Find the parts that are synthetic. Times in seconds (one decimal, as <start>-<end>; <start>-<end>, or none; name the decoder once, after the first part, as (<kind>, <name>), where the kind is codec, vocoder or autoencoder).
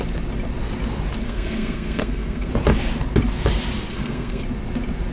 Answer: 1.2-2.5 (codec, SNAC); 3.9-4.4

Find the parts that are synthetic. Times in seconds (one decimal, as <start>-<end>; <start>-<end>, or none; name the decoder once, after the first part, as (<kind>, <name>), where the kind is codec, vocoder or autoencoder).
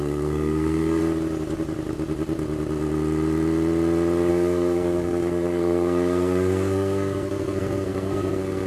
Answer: 0.0-1.0 (codec, SNAC); 4.3-8.7